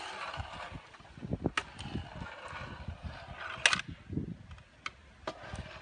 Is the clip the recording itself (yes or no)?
yes